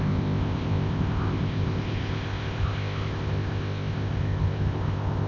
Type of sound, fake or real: fake